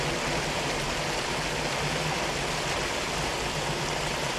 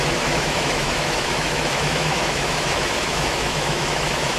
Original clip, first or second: first